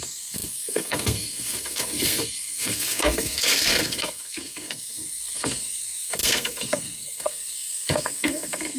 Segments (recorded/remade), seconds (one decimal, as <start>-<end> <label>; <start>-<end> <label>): 0.0-8.8 remade